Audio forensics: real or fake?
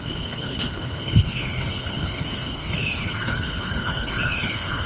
fake